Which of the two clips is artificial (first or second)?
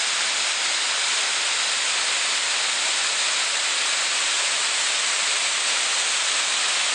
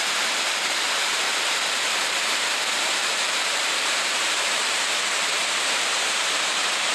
second